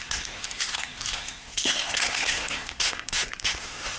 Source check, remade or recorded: remade